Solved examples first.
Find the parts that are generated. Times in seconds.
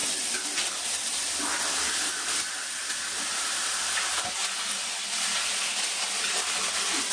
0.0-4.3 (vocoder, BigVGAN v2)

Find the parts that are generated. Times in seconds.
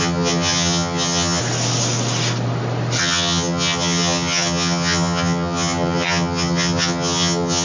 0.0-1.4 (vocoder, HiFi-GAN); 3.0-7.6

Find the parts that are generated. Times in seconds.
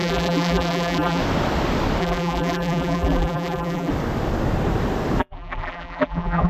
0.0-1.2 (vocoder, BigVGAN v2); 2.0-3.9; 5.2-6.5